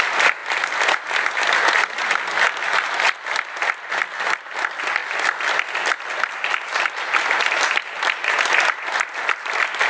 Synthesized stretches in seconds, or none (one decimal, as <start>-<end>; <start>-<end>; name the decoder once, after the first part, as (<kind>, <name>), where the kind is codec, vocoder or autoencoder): none